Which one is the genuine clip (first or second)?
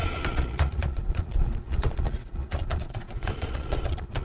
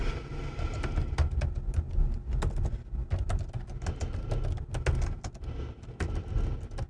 second